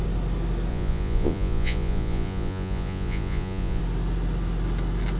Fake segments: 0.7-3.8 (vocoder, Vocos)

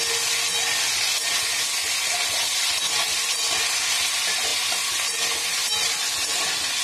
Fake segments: none